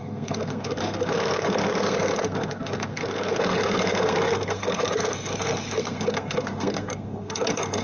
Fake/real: fake